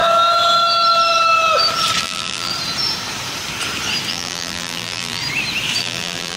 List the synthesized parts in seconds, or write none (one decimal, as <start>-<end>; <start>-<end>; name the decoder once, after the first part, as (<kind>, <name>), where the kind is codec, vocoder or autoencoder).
2.0-2.5 (vocoder, BigVGAN v2); 4.1-5.2; 5.8-6.4